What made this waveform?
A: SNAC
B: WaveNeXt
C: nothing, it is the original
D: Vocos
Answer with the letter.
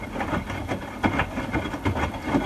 C